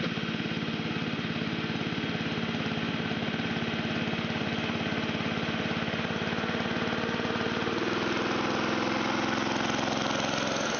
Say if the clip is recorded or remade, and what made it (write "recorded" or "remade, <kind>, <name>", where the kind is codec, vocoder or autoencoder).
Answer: recorded